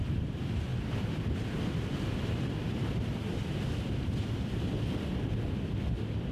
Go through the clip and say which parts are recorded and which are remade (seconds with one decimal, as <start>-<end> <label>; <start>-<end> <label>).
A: 0.0-0.7 recorded; 0.7-4.5 remade; 4.5-6.3 recorded